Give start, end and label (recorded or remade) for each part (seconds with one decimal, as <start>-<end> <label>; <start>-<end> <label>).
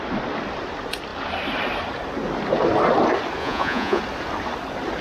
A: 0.0-3.4 recorded; 3.4-4.0 remade; 4.0-5.0 recorded